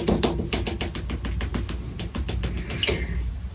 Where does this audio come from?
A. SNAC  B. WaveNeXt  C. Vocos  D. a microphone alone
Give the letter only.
D